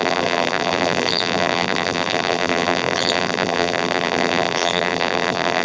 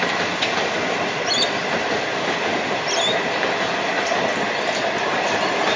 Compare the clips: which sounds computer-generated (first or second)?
first